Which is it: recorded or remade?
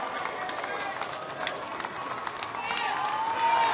recorded